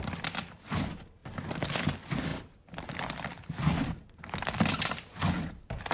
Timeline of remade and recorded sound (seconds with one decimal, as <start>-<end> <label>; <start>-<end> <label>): 0.0-2.3 recorded; 2.3-5.9 remade